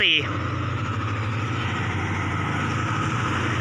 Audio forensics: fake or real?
real